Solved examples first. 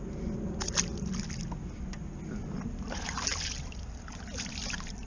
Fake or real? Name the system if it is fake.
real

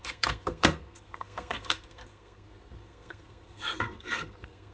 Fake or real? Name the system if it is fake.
fake, codec, SNAC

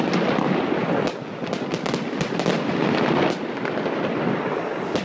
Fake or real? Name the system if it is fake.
real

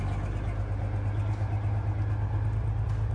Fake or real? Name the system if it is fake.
real